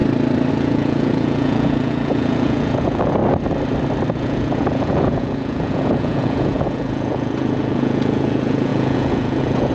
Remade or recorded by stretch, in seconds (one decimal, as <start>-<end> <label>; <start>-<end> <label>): 0.0-0.5 recorded; 0.5-3.2 remade; 3.2-4.1 recorded; 4.1-9.7 remade